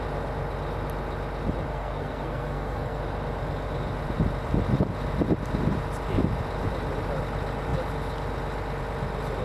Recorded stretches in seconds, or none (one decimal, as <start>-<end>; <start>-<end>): 0.0-1.7; 3.0-9.4